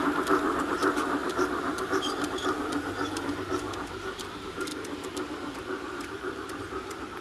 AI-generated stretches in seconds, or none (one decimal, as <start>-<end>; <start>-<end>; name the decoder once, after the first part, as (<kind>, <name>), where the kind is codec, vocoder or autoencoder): 0.6-7.2 (vocoder, BigVGAN v2)